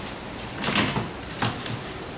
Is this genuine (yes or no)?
yes